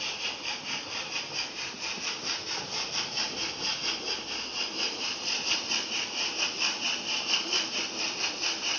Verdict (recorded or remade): recorded